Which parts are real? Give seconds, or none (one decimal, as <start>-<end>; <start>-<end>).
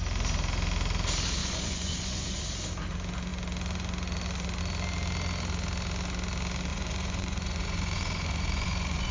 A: 0.0-1.4; 2.4-6.7